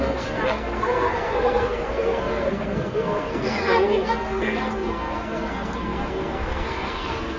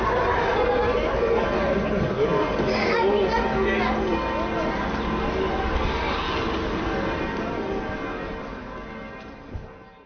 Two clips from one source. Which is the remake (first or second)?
first